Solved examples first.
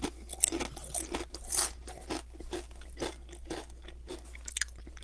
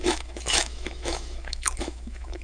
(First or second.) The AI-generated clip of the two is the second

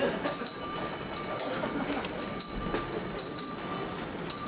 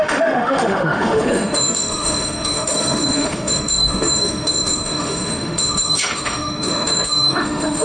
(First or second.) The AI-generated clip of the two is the second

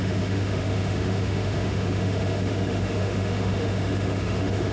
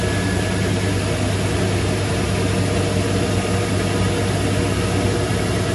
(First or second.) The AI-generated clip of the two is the first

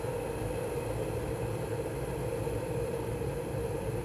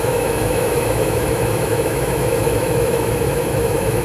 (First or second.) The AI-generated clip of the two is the second